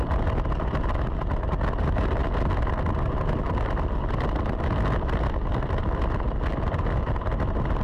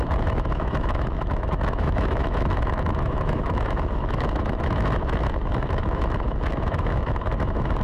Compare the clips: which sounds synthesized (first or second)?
second